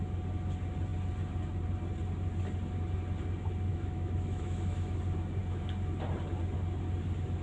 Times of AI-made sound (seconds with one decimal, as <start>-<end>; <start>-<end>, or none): 3.7-5.0